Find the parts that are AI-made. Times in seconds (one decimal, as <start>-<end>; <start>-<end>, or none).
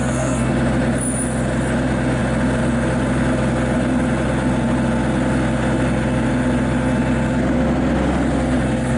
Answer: 0.0-0.5